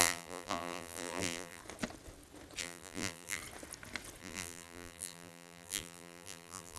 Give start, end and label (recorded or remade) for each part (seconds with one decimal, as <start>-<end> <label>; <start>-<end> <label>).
0.0-1.6 remade; 1.6-2.6 recorded; 2.6-3.4 remade; 3.4-4.2 recorded; 4.2-6.8 remade